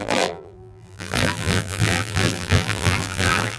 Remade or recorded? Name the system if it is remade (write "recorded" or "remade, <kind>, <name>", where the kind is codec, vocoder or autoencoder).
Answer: remade, vocoder, BigVGAN v2